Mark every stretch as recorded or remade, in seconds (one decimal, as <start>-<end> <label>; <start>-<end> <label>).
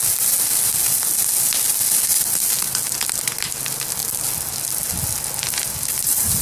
0.0-6.4 recorded